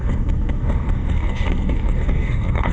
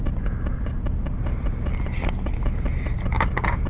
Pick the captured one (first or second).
second